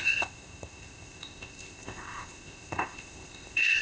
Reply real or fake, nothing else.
fake